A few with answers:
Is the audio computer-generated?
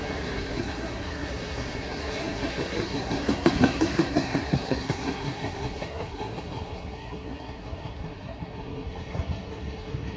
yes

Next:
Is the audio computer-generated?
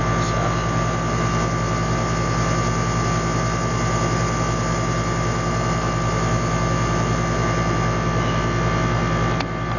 no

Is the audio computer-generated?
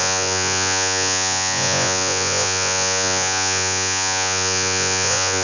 yes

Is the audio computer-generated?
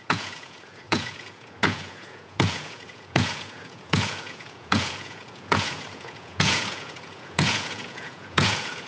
yes